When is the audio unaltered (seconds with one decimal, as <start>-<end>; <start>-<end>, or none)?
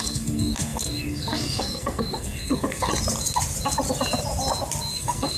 2.9-4.9